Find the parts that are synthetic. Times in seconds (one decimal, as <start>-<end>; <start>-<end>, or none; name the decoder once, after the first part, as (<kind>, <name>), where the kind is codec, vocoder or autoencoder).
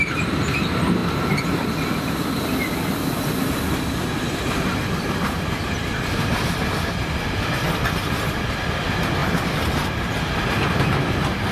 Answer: none